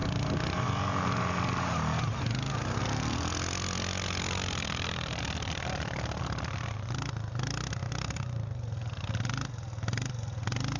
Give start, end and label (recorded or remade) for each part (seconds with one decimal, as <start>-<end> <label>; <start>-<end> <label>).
0.0-10.8 recorded